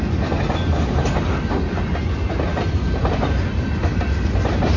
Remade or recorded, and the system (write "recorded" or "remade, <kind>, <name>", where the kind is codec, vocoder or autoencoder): recorded